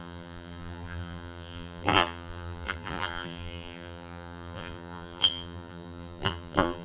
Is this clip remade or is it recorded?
remade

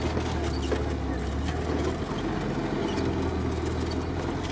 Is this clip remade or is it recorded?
recorded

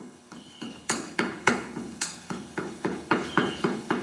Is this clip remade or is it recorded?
remade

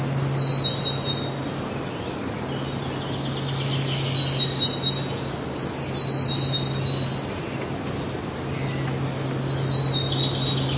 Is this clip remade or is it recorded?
recorded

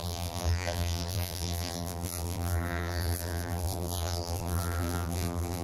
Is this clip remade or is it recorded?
remade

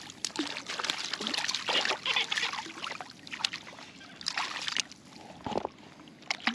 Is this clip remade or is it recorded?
recorded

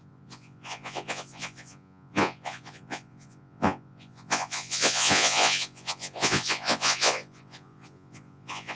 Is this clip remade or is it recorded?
remade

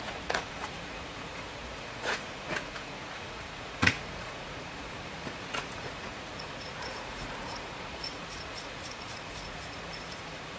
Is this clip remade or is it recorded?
remade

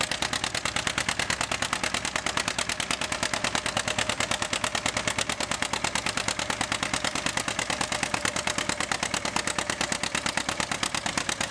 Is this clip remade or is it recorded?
recorded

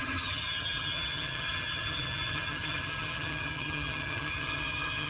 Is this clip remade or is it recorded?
remade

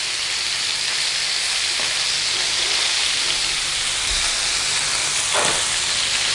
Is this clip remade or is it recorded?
recorded